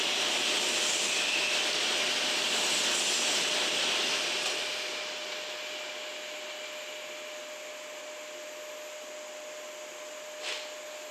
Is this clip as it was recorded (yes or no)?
yes